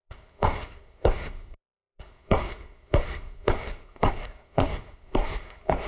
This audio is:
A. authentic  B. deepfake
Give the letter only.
B